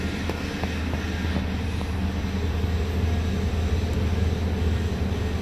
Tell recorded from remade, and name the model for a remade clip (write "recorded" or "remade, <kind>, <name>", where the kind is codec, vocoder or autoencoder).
recorded